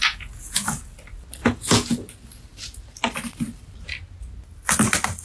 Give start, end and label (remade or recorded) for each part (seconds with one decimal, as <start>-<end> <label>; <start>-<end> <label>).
0.0-0.8 remade; 0.8-1.4 recorded; 1.4-2.1 remade; 2.1-5.2 recorded